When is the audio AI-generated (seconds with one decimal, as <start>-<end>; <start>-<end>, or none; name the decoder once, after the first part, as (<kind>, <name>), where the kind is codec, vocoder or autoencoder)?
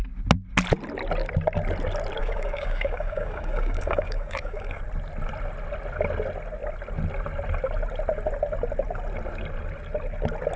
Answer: 2.2-4.8 (codec, DAC)